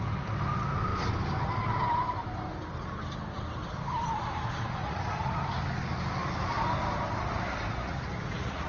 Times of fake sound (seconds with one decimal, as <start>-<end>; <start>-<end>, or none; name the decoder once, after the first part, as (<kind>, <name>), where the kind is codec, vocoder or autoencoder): 4.8-5.3 (vocoder, Vocos); 7.7-8.7